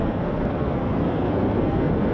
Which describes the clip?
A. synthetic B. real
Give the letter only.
A